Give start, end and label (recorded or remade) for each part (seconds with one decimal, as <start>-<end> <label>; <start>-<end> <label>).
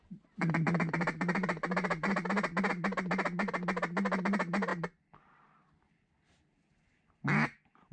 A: 0.0-7.9 recorded